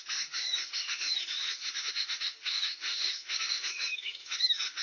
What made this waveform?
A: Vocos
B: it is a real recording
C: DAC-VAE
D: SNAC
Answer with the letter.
C